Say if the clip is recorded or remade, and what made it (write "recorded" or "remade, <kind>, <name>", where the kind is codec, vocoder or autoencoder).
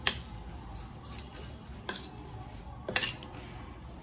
recorded